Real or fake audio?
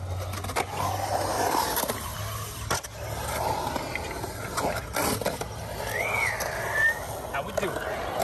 real